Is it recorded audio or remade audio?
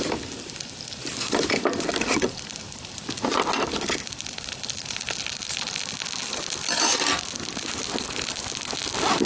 recorded